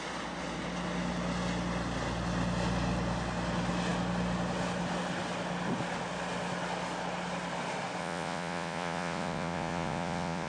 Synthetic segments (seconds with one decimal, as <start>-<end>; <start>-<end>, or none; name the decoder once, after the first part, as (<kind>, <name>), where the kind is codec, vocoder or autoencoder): 8.0-10.5 (vocoder, Vocos)